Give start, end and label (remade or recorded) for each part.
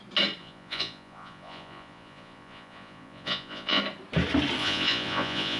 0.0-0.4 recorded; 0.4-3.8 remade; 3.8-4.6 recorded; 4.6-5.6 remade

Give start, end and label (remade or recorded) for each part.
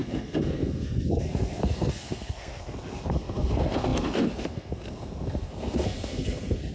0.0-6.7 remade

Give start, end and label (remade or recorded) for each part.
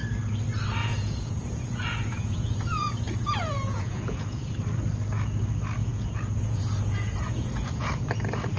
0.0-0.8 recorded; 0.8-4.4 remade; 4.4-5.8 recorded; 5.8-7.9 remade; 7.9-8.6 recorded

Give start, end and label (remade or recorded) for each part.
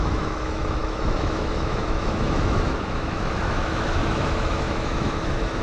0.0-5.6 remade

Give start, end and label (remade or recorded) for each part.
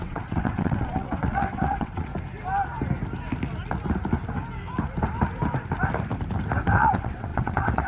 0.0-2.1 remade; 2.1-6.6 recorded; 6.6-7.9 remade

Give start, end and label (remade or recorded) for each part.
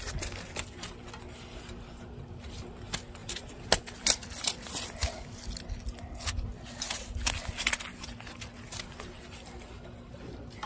0.0-3.2 recorded; 3.2-3.7 remade; 3.7-10.7 recorded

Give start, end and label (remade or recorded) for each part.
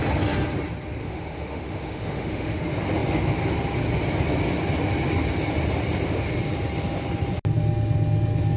0.0-1.0 recorded; 1.0-2.6 remade; 2.6-8.6 recorded